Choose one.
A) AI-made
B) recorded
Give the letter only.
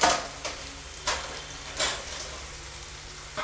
B